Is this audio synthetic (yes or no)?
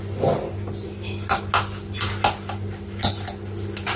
no